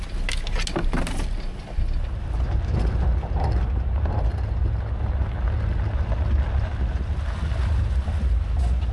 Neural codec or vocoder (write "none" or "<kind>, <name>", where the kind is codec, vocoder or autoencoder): none